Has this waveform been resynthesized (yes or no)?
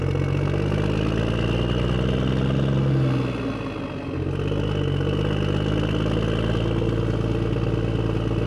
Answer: no